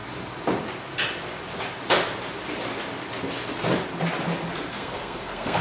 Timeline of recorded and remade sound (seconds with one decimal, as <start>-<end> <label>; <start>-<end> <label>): 0.0-4.7 recorded; 4.7-5.6 remade